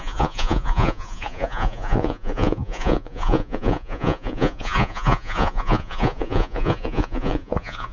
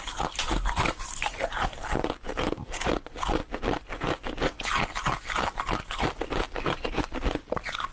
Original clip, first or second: second